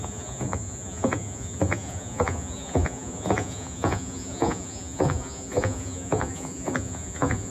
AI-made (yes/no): yes